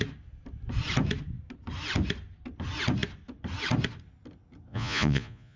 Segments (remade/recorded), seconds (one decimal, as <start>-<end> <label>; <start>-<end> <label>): 0.0-4.7 recorded; 4.7-5.6 remade